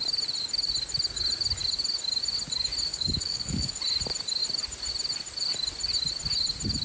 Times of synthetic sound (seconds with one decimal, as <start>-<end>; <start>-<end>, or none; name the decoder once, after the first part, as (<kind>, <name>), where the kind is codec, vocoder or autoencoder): 2.9-3.8 (codec, DAC)